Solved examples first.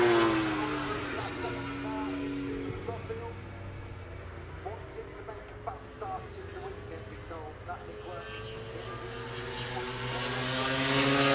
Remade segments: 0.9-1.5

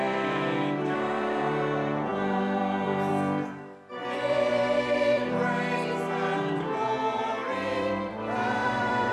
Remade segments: 0.0-9.1

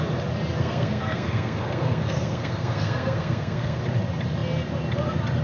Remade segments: 0.6-3.8

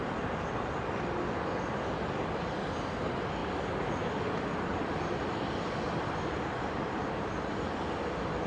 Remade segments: none

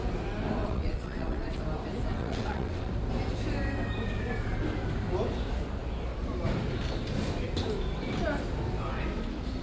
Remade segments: 0.6-1.6; 2.1-2.9